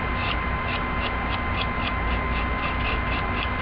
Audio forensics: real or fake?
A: real